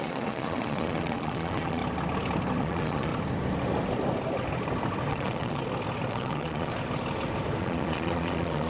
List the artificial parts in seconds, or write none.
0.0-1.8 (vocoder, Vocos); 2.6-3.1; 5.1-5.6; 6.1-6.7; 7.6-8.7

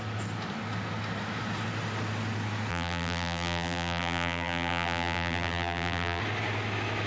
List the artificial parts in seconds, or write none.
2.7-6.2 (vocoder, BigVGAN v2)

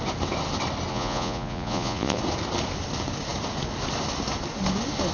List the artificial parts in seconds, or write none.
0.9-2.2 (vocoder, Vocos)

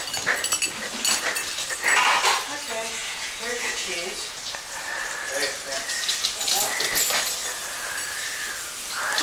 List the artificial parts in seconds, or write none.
3.0-4.4 (vocoder, Vocos)